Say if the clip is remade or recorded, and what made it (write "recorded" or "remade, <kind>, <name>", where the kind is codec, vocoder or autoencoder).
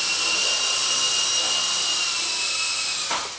recorded